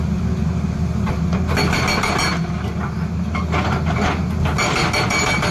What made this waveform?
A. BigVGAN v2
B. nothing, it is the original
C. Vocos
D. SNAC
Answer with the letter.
B